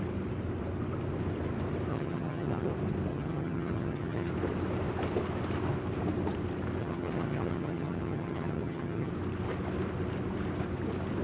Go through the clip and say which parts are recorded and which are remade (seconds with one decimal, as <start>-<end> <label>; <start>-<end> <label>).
0.0-1.9 recorded; 1.9-2.7 remade; 2.7-3.1 recorded; 3.1-4.3 remade; 4.3-6.8 recorded; 6.8-9.1 remade; 9.1-11.2 recorded